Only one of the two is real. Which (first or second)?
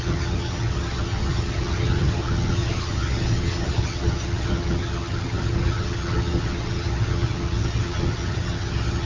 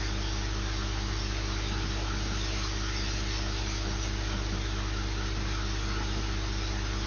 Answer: second